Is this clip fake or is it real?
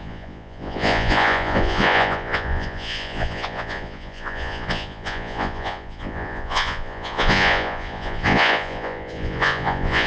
fake